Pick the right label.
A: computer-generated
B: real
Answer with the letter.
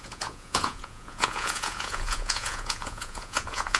A